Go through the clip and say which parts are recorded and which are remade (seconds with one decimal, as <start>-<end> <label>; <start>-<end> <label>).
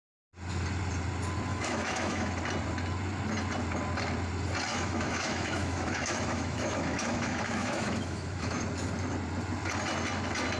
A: 0.0-1.5 recorded; 1.5-2.3 remade; 2.3-4.7 recorded; 4.7-8.6 remade; 8.6-10.6 recorded